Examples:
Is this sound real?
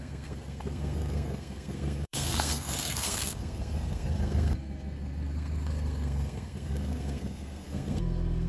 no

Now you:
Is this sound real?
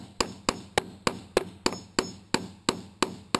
yes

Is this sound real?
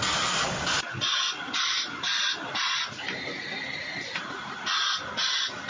yes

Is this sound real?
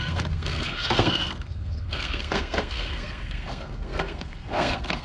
no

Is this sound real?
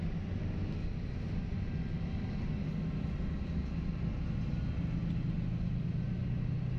yes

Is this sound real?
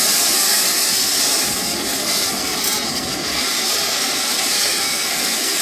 no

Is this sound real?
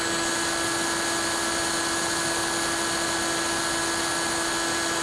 yes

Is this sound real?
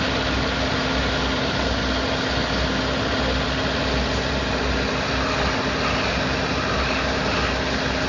yes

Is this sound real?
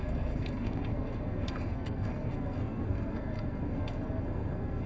no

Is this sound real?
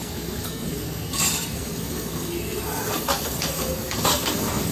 no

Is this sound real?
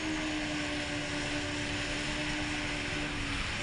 yes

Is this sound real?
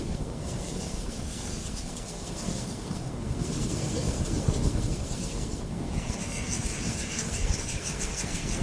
no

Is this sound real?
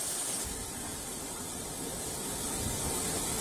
yes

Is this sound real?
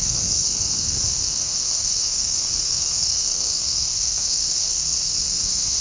no